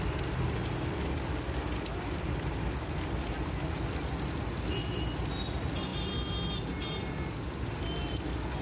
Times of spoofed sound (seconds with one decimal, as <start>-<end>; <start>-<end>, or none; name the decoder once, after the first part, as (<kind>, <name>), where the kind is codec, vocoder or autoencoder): none

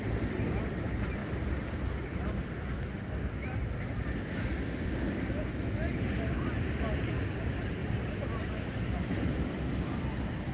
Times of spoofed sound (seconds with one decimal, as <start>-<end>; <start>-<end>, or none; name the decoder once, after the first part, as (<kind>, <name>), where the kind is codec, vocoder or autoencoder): none

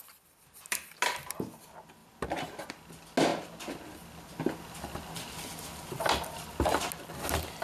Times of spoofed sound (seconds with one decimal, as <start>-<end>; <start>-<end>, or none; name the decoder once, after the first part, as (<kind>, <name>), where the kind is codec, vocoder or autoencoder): none

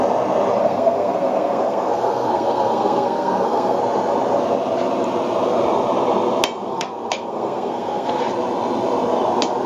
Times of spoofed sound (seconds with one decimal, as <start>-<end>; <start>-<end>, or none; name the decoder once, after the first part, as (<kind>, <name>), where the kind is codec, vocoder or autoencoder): 0.6-3.8 (codec, SNAC); 6.7-8.2

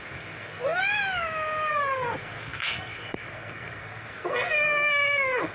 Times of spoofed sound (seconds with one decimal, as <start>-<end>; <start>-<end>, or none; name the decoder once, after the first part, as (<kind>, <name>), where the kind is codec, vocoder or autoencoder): 0.0-0.8 (codec, SNAC); 1.7-5.5

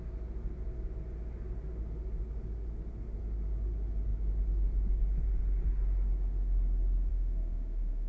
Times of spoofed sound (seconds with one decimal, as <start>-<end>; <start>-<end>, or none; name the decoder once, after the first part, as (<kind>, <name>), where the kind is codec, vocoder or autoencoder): 7.1-8.1 (autoencoder, DAC-VAE)

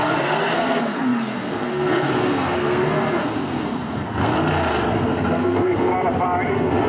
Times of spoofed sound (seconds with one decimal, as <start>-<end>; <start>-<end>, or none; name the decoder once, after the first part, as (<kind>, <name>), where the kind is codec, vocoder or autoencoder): 0.0-4.3 (codec, SNAC); 4.9-5.9; 6.5-6.9

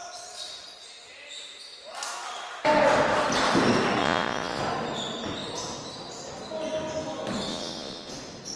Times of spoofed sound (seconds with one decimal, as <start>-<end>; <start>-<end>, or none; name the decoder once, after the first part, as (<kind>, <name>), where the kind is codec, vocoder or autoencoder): 4.0-4.6 (vocoder, Vocos); 7.5-8.1